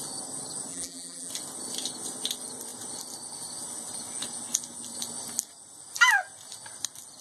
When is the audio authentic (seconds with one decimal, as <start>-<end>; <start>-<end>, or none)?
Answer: 0.0-0.7; 1.3-7.2